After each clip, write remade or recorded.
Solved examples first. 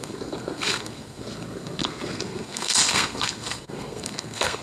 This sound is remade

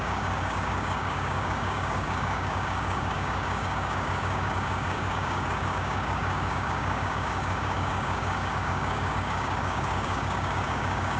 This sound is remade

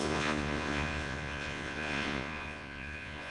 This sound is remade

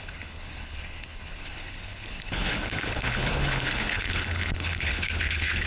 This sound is remade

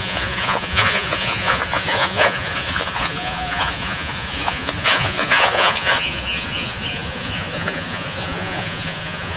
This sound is remade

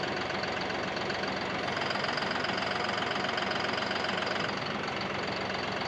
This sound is recorded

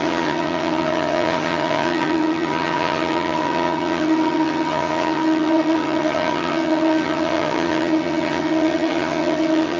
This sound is remade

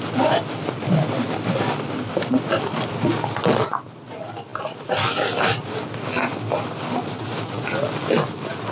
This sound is recorded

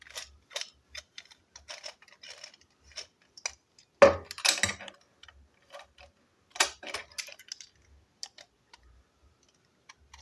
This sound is recorded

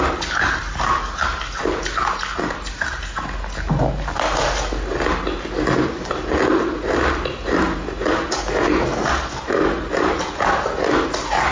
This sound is recorded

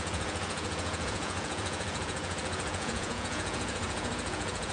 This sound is remade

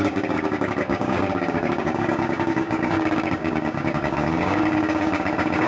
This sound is remade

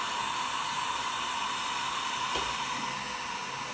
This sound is recorded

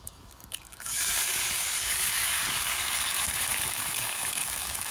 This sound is remade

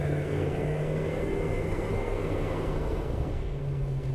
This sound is remade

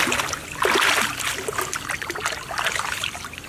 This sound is recorded